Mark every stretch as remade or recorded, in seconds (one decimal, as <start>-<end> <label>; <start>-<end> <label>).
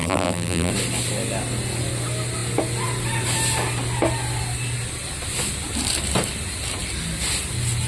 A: 0.0-0.7 remade; 0.7-7.9 recorded